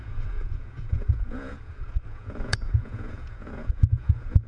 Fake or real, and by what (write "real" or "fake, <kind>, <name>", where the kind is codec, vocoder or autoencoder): fake, vocoder, Vocos